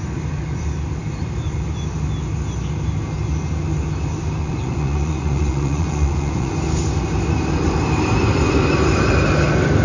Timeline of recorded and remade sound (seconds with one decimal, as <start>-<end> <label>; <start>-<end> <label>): 0.0-4.4 recorded; 4.4-6.5 remade; 6.5-9.8 recorded